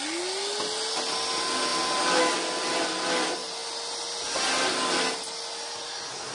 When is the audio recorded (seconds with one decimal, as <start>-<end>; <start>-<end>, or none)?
0.0-6.3

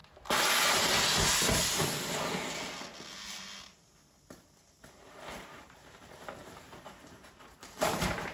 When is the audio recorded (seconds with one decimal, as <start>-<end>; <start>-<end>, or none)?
0.0-4.8